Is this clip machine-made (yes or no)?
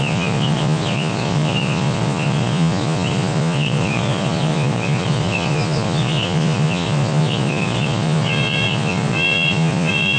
yes